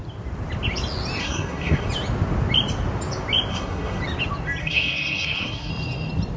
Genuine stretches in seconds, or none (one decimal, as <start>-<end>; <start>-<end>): 0.0-1.2; 1.9-3.5; 4.0-4.6; 5.7-6.4